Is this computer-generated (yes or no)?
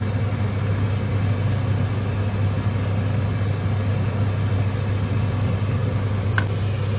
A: no